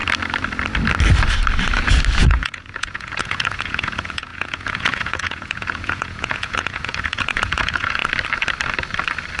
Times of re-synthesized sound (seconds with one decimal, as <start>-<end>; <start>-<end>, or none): 2.2-8.0